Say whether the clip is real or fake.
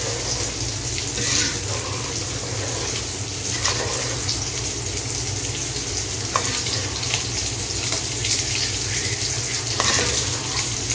real